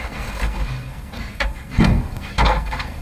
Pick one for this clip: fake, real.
fake